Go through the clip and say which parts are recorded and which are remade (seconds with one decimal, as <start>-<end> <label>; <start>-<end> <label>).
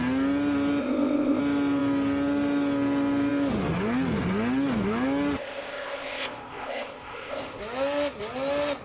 0.0-0.8 recorded; 0.8-1.4 remade; 1.4-5.4 recorded; 5.4-7.6 remade; 7.6-8.8 recorded